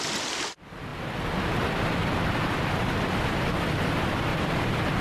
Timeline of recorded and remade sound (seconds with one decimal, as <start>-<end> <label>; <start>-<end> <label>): 0.0-0.9 recorded; 0.9-3.9 remade; 3.9-4.3 recorded; 4.3-5.0 remade